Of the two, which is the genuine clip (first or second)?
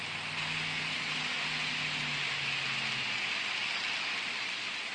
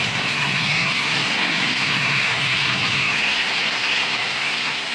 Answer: first